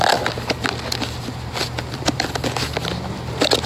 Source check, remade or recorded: recorded